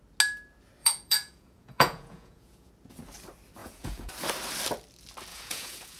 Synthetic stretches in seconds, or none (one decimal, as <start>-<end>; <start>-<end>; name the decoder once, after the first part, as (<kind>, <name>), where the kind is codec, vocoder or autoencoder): 0.8-2.7 (vocoder, Vocos); 3.6-4.1; 5.3-6.0